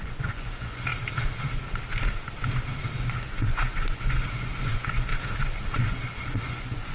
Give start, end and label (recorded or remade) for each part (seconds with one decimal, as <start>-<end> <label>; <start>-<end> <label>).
0.0-0.9 remade; 0.9-3.0 recorded; 3.0-5.1 remade; 5.1-5.8 recorded; 5.8-6.9 remade

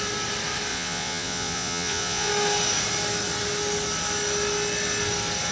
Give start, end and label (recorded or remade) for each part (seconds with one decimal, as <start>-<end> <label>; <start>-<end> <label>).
0.0-0.7 recorded; 0.7-2.3 remade; 2.3-5.5 recorded